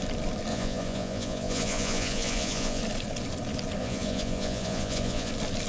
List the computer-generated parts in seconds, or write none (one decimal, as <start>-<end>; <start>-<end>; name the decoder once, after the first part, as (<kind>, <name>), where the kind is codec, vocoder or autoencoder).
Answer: 0.5-2.8 (vocoder, Vocos); 3.8-5.3